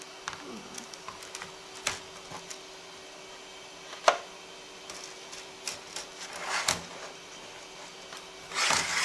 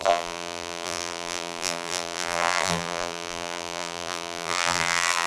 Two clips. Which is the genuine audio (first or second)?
first